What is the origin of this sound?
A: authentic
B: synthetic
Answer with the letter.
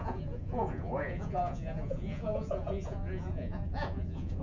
B